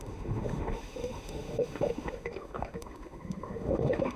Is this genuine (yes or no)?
no